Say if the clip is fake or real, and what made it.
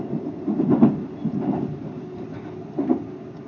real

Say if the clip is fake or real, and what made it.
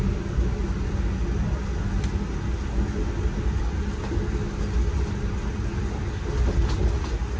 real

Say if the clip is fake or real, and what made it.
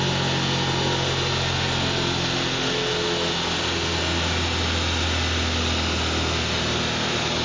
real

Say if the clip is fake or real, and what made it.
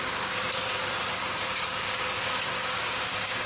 fake, codec, DAC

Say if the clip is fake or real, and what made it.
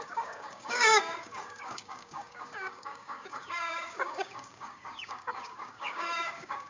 fake, codec, DAC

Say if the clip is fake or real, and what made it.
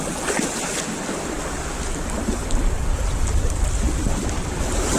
real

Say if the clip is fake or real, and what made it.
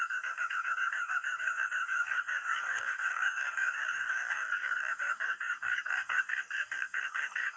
fake, codec, DAC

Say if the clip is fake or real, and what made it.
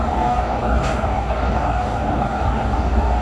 fake, codec, DAC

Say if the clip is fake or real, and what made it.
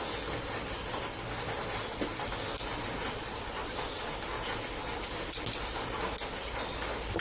real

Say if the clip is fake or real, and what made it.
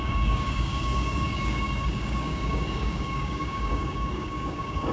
fake, codec, DAC